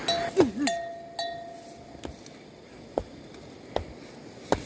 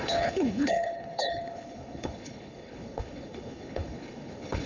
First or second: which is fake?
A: second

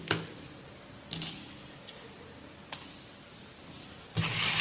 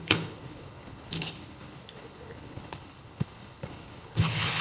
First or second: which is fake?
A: second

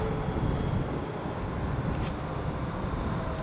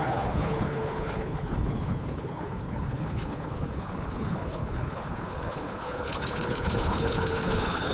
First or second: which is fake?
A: second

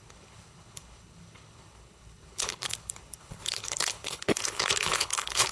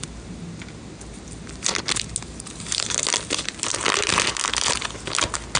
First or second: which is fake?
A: first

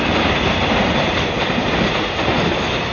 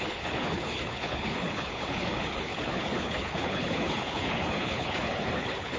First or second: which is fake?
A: second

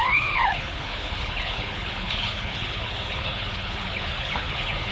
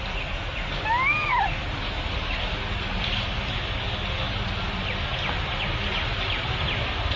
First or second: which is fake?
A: first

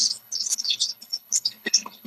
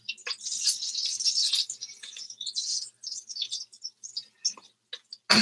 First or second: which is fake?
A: first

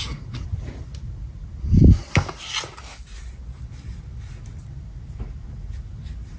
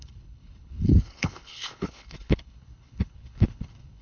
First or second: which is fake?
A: second